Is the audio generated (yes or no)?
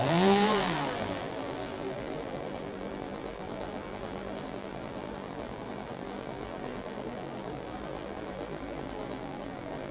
yes